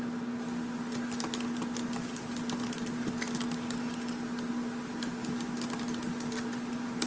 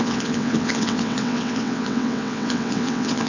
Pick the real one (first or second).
first